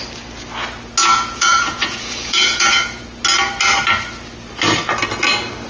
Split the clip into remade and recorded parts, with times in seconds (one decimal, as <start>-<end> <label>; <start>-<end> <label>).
0.0-1.0 recorded; 1.0-3.0 remade; 3.0-5.7 recorded